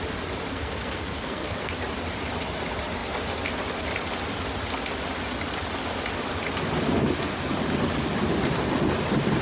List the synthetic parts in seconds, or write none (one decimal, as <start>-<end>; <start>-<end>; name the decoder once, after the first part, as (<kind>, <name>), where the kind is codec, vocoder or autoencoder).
0.5-1.7 (codec, SNAC)